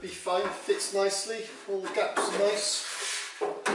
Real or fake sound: real